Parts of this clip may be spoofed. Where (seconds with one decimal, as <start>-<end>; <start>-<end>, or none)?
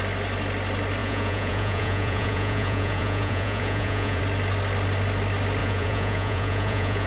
1.0-4.2; 5.6-7.1